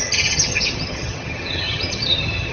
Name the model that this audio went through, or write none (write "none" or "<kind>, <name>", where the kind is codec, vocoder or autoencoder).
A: vocoder, HiFi-GAN